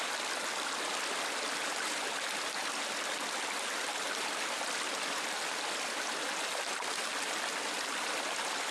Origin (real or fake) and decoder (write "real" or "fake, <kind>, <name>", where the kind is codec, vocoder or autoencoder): real